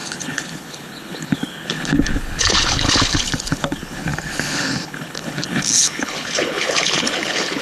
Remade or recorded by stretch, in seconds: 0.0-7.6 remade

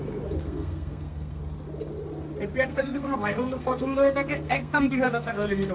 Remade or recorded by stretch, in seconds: 0.0-0.4 recorded; 0.4-1.4 remade; 1.4-2.7 recorded; 2.7-5.7 remade

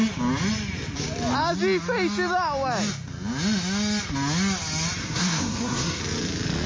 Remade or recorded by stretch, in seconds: 0.0-5.0 recorded; 5.0-6.0 remade; 6.0-6.7 recorded

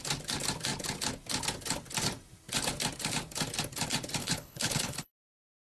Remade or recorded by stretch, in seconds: 0.0-4.2 recorded; 4.2-5.1 remade; 5.1-5.7 recorded